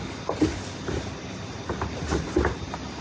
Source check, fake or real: real